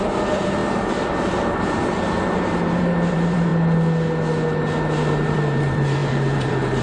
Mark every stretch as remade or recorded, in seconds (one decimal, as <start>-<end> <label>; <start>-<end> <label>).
0.0-3.5 remade; 3.5-4.8 recorded; 4.8-6.8 remade